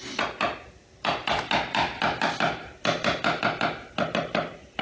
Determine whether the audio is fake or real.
real